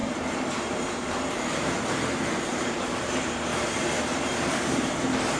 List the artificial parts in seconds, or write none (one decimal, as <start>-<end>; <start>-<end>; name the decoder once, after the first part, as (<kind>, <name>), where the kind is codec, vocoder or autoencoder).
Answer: 0.0-3.0 (vocoder, BigVGAN v2); 3.5-5.4

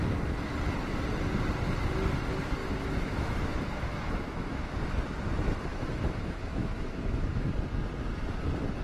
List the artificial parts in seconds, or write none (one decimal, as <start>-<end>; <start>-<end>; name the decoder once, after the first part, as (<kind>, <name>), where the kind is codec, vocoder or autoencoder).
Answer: 2.6-4.8 (autoencoder, DAC-VAE); 5.7-7.5

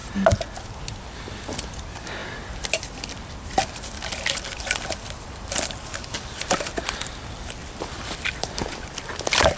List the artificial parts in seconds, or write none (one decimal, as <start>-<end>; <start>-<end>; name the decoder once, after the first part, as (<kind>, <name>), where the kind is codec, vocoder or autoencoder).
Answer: 0.9-2.2 (vocoder, BigVGAN v2); 6.0-9.6